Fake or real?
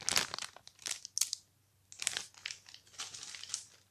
real